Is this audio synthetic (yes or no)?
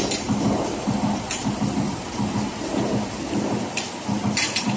no